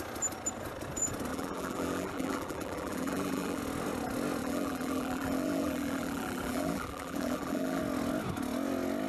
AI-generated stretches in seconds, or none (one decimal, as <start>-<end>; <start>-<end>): 1.3-3.6; 4.4-7.8